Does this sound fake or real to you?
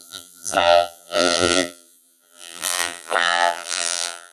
fake